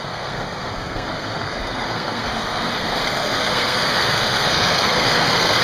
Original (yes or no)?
no